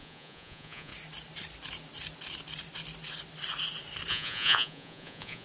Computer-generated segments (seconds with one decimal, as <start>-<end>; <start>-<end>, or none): 0.0-0.9; 4.1-5.4